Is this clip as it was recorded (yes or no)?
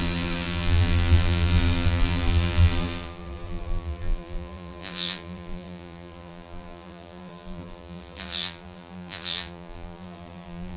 no